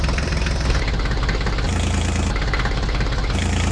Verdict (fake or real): fake